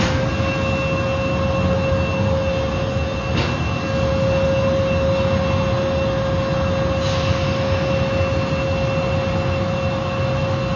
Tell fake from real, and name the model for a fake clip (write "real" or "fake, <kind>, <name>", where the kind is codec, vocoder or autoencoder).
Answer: real